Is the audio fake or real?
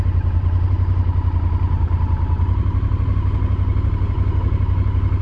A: real